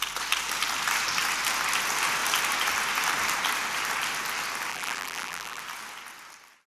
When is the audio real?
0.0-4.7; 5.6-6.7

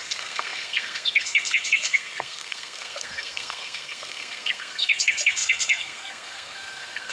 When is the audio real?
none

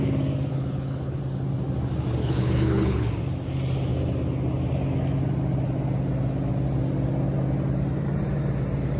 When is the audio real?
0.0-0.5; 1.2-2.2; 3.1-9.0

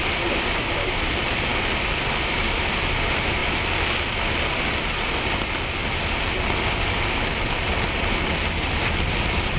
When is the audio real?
3.4-4.9; 7.7-9.0

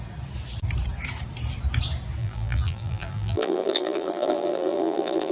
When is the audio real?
0.0-2.2

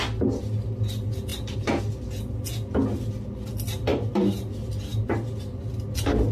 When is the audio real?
0.0-1.3; 1.8-3.9; 4.7-6.3